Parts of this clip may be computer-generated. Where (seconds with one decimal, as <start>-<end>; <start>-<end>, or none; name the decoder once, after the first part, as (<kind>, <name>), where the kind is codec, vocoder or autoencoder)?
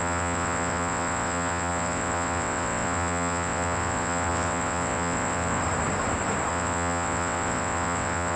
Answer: 0.0-5.6 (vocoder, WaveNeXt); 6.5-8.4